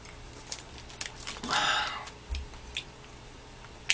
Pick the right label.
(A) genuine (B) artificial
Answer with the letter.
A